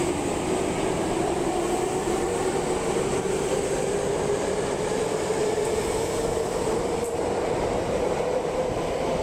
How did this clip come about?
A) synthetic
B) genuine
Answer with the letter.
B